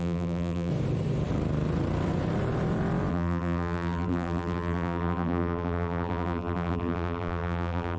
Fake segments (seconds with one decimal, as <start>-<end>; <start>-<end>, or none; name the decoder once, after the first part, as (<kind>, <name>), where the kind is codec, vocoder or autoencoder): 0.0-0.7 (vocoder, BigVGAN v2); 3.1-8.0